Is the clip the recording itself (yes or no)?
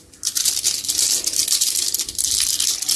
yes